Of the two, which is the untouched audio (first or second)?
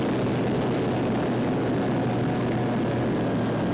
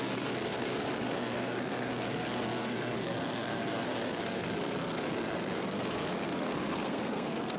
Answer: first